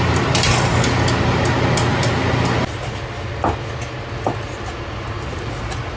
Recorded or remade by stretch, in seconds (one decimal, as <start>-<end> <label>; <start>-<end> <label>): 0.0-6.0 recorded